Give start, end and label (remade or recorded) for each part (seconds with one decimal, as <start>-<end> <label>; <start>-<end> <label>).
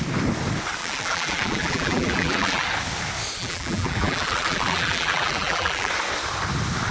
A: 0.0-0.8 recorded; 0.8-2.7 remade; 2.7-3.4 recorded; 3.4-5.9 remade; 5.9-6.9 recorded